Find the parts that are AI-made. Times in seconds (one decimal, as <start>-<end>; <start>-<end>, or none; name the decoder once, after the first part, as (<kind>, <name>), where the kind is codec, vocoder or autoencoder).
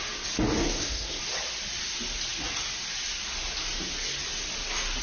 0.6-1.2 (codec, SNAC)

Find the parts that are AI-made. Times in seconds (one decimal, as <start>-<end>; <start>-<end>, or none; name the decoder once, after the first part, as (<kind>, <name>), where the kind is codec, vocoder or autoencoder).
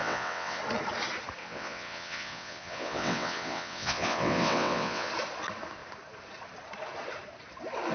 0.0-0.6 (vocoder, WaveNeXt); 1.4-5.1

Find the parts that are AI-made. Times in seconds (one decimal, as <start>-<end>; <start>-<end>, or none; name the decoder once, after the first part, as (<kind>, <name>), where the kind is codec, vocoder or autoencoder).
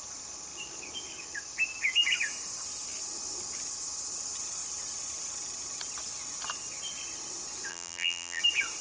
7.7-8.4 (vocoder, BigVGAN v2)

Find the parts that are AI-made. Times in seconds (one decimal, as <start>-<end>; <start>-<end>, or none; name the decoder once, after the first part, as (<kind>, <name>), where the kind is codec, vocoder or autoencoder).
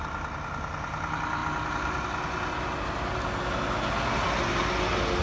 none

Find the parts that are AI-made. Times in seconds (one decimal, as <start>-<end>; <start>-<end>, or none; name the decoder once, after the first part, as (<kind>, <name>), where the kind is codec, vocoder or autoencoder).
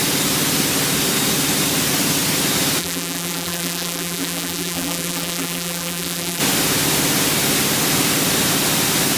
2.8-6.4 (vocoder, BigVGAN v2)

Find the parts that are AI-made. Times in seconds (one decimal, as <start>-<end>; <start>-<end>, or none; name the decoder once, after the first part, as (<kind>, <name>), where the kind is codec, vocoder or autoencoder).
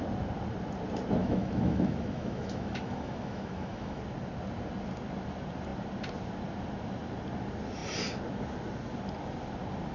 1.2-4.0 (autoencoder, DAC-VAE)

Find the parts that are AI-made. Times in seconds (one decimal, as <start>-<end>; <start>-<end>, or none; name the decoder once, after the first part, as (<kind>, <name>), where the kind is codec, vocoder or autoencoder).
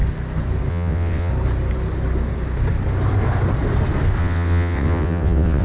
0.7-1.3 (vocoder, WaveNeXt); 4.2-5.6